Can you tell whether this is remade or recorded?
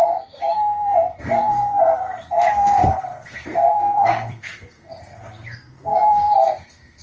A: remade